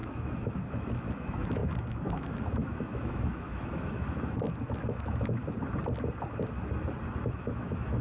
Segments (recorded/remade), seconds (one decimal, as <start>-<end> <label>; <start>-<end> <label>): 0.0-5.4 remade; 5.4-7.2 recorded; 7.2-8.0 remade